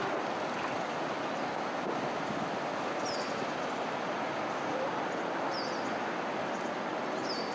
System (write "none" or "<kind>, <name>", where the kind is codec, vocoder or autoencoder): none